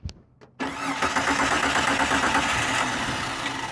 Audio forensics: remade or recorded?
recorded